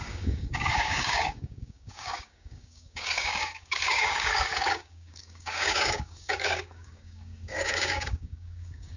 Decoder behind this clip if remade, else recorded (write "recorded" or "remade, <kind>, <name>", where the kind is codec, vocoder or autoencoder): remade, codec, DAC